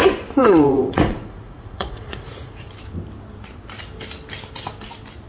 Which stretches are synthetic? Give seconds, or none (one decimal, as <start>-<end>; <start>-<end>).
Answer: 0.4-2.7